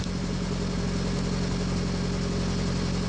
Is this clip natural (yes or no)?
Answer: yes